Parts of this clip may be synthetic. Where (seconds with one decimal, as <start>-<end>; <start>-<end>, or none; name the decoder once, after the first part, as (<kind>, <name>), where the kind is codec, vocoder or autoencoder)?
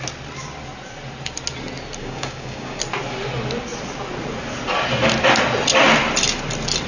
2.0-2.8 (codec, DAC)